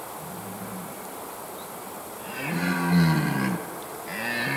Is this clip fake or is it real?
real